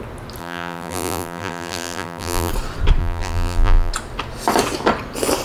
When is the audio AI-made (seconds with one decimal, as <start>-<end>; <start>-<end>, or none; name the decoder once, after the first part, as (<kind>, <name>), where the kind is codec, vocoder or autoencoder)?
0.4-2.5 (vocoder, BigVGAN v2); 3.0-3.9